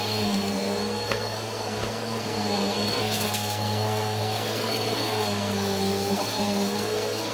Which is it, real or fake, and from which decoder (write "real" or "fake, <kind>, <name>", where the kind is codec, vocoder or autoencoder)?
fake, codec, SNAC